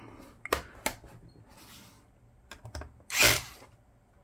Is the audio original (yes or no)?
yes